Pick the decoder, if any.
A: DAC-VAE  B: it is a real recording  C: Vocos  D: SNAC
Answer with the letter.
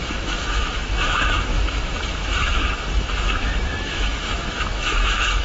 A